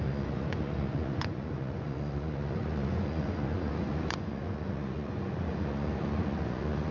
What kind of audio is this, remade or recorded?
remade